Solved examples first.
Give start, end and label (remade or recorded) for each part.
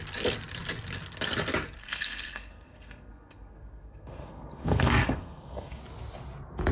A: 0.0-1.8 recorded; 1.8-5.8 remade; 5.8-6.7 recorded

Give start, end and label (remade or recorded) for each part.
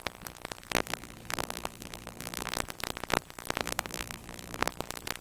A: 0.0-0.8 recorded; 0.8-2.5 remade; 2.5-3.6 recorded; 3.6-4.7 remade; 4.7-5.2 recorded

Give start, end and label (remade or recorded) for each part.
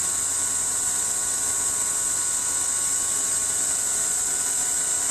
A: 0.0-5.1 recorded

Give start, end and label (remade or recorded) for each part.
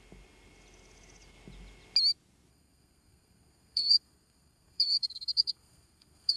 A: 0.0-2.5 recorded; 2.5-6.4 remade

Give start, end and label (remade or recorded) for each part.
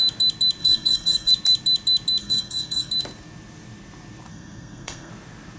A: 0.0-0.6 recorded; 0.6-1.3 remade; 1.3-2.2 recorded; 2.2-2.9 remade; 2.9-4.3 recorded; 4.3-5.1 remade; 5.1-5.6 recorded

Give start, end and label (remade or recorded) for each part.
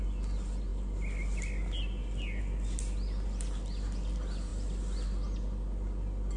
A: 0.0-6.4 recorded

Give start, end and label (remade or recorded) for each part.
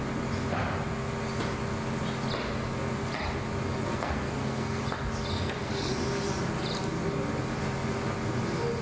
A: 0.0-3.9 recorded; 3.9-4.8 remade; 4.8-5.3 recorded; 5.3-5.9 remade; 5.9-8.8 recorded